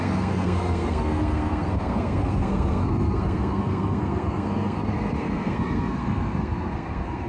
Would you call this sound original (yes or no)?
no